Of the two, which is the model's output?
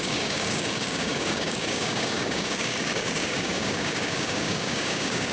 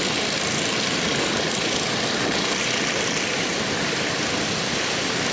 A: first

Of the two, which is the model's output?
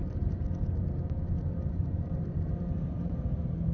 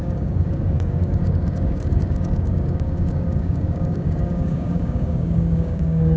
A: second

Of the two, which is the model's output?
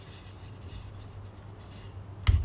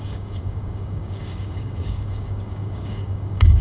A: second